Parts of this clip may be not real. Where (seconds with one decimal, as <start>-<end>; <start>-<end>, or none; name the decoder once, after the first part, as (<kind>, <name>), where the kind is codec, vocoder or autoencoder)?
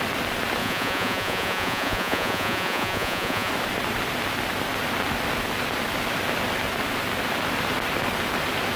0.6-3.5 (vocoder, Vocos)